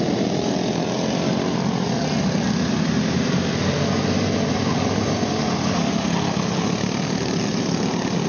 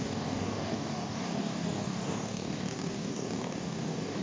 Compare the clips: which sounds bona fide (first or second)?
first